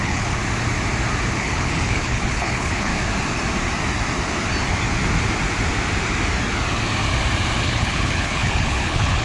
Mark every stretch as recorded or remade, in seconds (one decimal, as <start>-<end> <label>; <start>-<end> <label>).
0.0-0.4 remade; 0.4-1.4 recorded; 1.4-2.9 remade; 2.9-7.6 recorded; 7.6-9.2 remade